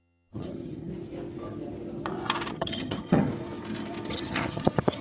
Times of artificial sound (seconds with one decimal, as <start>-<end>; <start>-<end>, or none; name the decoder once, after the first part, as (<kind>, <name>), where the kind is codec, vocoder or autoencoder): 0.0-0.9 (vocoder, HiFi-GAN); 2.5-3.3; 4.1-5.0